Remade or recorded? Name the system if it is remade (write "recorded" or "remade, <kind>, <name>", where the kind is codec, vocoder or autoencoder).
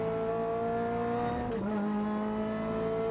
recorded